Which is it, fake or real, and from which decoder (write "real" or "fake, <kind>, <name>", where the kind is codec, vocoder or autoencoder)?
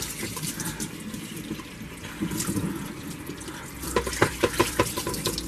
fake, vocoder, BigVGAN v2